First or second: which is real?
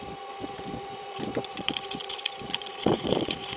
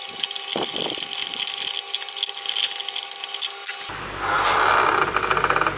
second